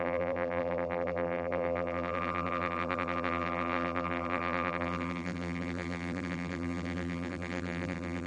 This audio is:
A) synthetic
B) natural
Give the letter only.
A